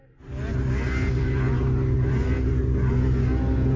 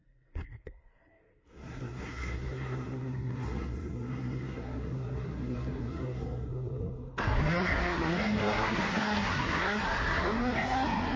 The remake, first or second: second